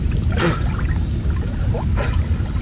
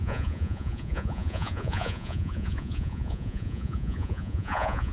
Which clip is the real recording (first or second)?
first